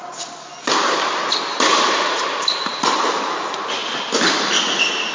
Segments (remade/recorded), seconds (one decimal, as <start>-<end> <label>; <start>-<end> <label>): 0.0-1.7 recorded; 1.7-3.1 remade; 3.1-5.1 recorded